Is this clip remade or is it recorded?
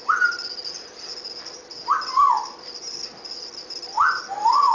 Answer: recorded